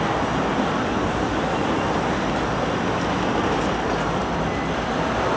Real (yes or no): yes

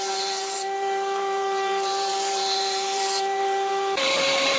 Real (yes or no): no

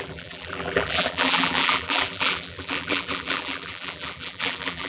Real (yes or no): no